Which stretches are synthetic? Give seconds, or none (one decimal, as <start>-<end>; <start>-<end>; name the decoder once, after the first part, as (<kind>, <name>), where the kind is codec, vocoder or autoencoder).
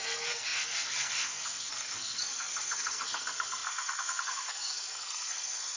0.0-5.8 (codec, SNAC)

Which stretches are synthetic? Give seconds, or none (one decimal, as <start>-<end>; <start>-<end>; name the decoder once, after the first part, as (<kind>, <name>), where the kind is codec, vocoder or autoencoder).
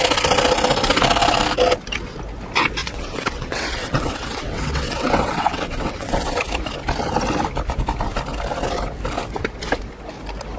2.8-6.4 (vocoder, WaveNeXt)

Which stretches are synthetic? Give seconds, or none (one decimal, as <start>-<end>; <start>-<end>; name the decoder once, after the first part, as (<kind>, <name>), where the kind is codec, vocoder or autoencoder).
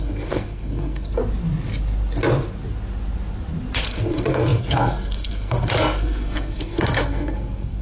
0.0-1.2 (codec, SNAC); 3.8-7.8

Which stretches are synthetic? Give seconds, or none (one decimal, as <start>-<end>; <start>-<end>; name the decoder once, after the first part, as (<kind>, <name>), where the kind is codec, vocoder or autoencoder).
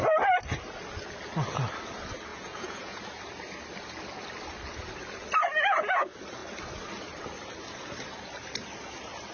2.3-3.0 (vocoder, Vocos)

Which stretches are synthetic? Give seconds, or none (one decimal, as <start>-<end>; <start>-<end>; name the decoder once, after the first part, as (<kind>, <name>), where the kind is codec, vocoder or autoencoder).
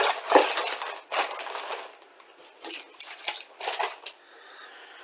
none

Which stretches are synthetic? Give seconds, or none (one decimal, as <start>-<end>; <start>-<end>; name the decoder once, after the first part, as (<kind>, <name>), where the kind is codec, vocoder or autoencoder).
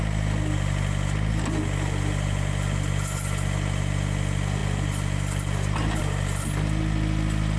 none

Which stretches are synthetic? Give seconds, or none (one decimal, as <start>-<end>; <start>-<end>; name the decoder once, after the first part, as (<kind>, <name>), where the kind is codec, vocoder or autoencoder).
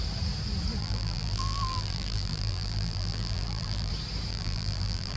0.8-3.9 (vocoder, BigVGAN v2); 4.3-5.2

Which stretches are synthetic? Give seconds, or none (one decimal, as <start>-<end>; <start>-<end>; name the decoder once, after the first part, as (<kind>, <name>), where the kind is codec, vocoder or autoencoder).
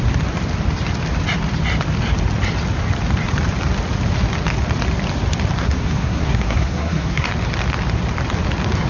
5.6-7.3 (codec, SNAC)